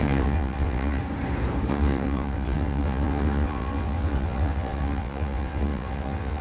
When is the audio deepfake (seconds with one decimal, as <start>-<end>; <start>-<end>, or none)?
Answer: 0.0-1.0; 1.7-6.4